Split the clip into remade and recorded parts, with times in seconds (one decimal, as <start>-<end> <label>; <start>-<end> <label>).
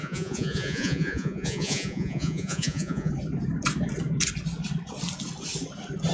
0.0-3.1 remade; 3.1-6.1 recorded